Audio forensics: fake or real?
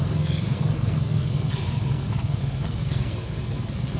fake